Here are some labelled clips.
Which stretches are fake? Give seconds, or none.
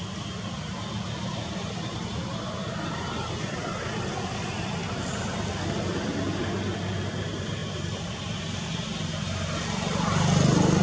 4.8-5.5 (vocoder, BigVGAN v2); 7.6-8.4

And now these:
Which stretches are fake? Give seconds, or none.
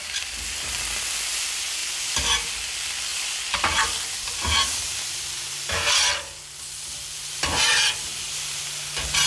none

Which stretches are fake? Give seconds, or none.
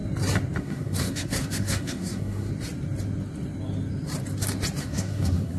0.6-2.5 (codec, SNAC); 4.8-5.6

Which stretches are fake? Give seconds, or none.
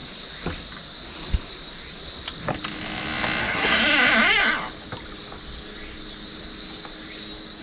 3.4-3.8 (codec, SNAC)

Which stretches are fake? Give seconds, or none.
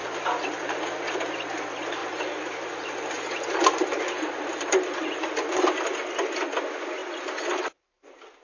0.0-0.5 (vocoder, BigVGAN v2); 2.0-5.2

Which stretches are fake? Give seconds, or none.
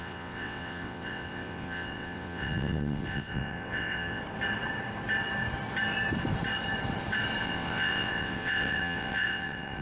0.0-4.2 (vocoder, WaveNeXt); 7.4-9.8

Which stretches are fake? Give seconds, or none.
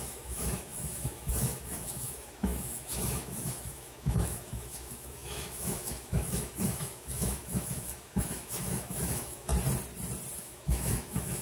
0.0-9.5 (autoencoder, DAC-VAE); 10.4-11.4